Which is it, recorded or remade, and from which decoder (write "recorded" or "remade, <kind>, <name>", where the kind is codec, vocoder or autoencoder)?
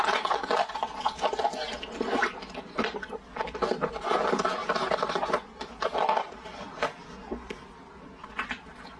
recorded